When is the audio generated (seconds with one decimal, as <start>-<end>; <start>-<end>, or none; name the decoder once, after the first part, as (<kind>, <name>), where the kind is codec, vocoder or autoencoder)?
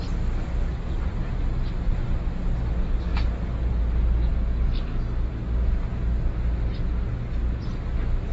0.7-1.7 (vocoder, BigVGAN v2)